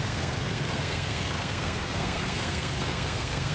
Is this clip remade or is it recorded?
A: remade